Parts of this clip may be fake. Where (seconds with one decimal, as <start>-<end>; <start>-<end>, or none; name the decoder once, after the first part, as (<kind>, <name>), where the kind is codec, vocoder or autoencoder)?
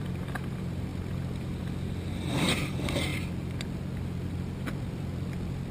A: 0.0-3.1 (vocoder, BigVGAN v2); 4.6-5.7